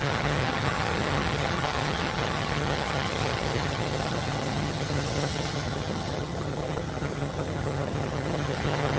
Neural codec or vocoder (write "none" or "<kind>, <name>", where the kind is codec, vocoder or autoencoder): vocoder, HiFi-GAN